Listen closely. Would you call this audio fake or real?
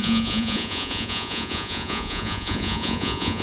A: fake